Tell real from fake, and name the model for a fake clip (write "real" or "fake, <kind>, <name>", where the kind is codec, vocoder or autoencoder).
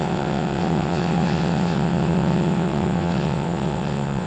fake, vocoder, WaveNeXt